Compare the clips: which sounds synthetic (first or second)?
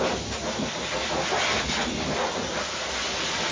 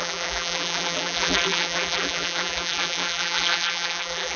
second